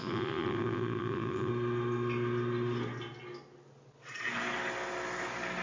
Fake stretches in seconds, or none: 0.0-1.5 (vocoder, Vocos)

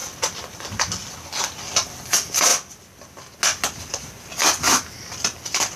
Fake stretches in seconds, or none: none